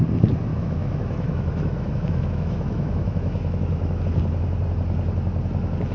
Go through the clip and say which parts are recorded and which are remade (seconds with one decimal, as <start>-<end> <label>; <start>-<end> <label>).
0.0-0.5 recorded; 0.5-4.0 remade; 4.0-5.9 recorded